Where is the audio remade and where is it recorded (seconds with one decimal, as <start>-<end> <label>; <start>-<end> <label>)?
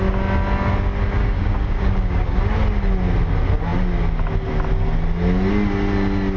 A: 0.0-1.2 recorded; 1.2-2.4 remade; 2.4-6.4 recorded